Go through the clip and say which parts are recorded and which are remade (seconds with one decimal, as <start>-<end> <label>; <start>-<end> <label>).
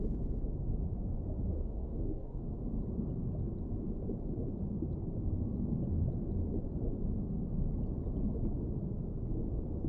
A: 0.0-1.5 recorded; 1.5-2.5 remade; 2.5-9.9 recorded